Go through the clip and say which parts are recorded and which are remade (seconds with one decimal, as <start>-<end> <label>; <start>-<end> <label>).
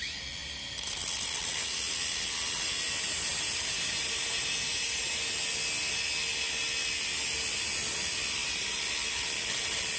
0.0-0.4 recorded; 0.4-1.0 remade; 1.0-3.3 recorded; 3.3-5.1 remade; 5.1-10.0 recorded